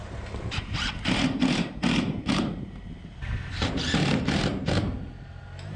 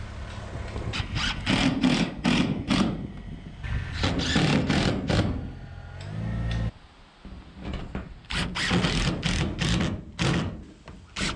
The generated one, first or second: first